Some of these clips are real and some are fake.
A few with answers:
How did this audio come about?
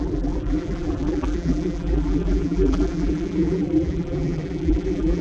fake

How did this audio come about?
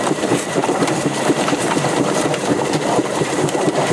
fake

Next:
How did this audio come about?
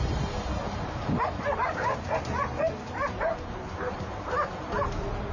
fake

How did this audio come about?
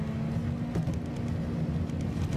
real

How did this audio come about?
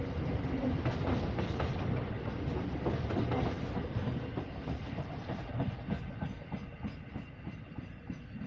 real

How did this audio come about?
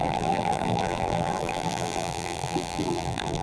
fake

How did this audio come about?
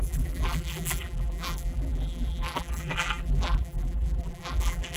fake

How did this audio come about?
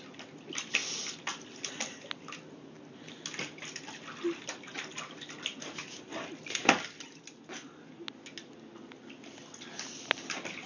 real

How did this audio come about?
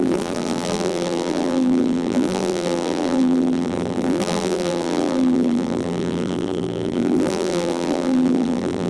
fake